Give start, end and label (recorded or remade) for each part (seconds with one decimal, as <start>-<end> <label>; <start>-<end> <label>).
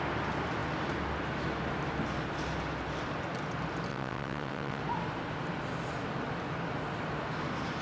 0.0-3.9 recorded; 3.9-4.8 remade; 4.8-7.8 recorded